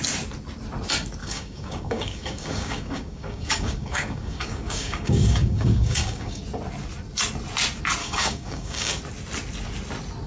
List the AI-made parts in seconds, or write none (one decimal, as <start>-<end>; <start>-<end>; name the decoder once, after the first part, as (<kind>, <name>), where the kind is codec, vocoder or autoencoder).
1.2-6.4 (codec, DAC); 8.0-9.0